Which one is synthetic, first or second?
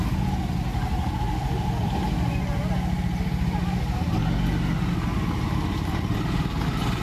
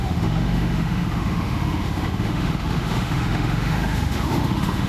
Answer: second